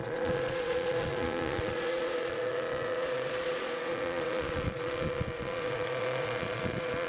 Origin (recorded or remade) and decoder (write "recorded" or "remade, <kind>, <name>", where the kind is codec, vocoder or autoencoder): remade, vocoder, Vocos